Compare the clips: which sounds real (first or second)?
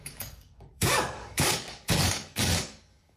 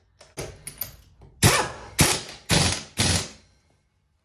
second